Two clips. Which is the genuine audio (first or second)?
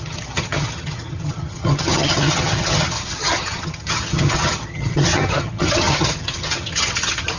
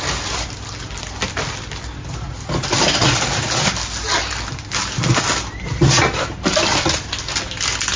second